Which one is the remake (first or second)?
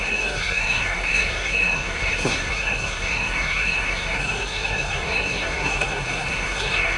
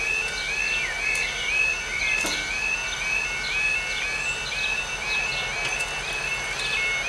first